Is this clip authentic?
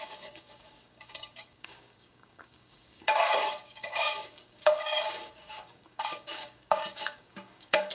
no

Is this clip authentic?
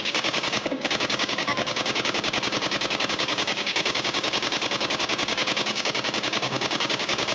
no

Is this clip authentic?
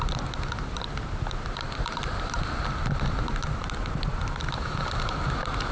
yes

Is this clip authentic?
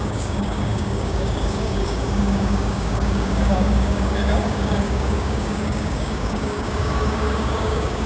no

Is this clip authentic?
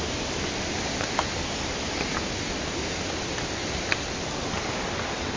yes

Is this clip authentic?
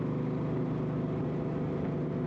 yes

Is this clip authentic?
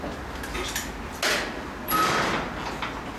yes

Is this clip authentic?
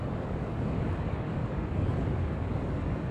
no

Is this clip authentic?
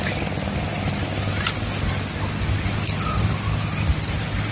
yes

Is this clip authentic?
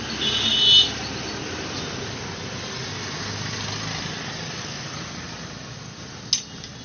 yes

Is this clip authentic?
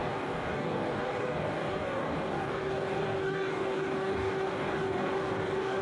no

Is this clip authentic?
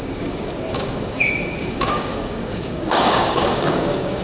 no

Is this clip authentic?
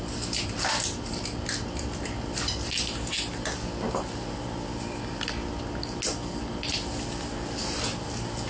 yes